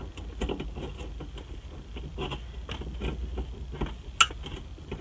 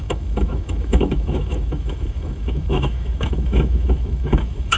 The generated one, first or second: second